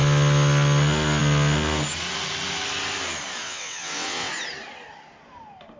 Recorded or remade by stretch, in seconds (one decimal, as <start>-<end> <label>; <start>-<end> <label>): 0.0-3.4 recorded; 3.4-4.3 remade; 4.3-5.8 recorded